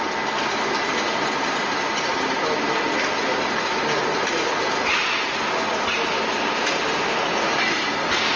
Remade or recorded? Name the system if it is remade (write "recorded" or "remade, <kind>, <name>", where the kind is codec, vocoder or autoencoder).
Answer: recorded